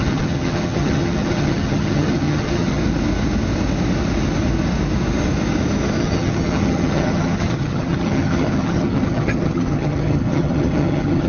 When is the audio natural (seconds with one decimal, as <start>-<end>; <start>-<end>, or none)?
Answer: 2.8-6.0